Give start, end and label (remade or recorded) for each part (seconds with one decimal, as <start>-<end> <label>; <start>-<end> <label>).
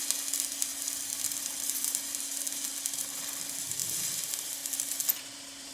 0.0-0.7 recorded; 0.7-2.2 remade; 2.2-3.8 recorded; 3.8-5.7 remade